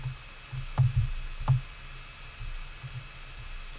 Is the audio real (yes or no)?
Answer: yes